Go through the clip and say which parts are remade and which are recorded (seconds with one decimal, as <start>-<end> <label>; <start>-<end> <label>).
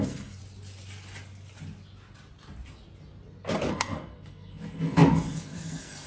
0.0-0.4 remade; 0.4-3.7 recorded; 3.7-6.1 remade